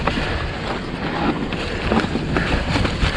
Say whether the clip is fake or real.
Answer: real